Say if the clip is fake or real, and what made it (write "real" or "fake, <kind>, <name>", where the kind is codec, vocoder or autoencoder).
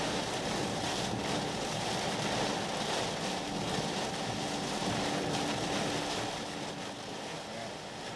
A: real